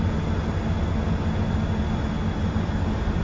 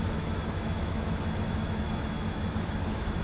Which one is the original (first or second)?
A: first